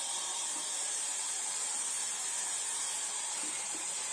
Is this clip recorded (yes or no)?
no